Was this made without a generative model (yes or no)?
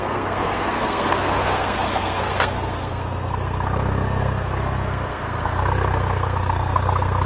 no